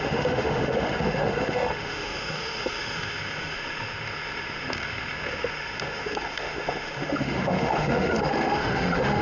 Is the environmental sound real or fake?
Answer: fake